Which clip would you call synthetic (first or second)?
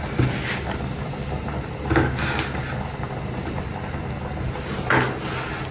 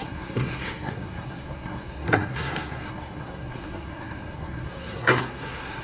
second